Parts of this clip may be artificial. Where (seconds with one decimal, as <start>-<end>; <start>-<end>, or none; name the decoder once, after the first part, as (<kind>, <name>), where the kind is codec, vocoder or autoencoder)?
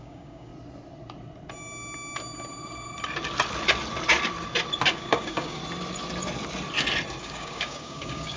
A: 0.0-0.5 (codec, DAC); 4.9-5.6; 7.2-8.4